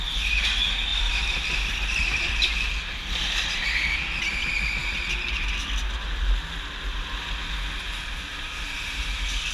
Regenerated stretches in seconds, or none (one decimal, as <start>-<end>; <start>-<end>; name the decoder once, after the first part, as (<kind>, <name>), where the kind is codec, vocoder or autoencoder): 0.9-2.7 (vocoder, BigVGAN v2); 8.3-9.0